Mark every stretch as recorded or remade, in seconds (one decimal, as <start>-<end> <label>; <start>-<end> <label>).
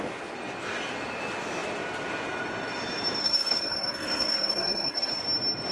0.0-3.2 recorded; 3.2-5.2 remade; 5.2-5.7 recorded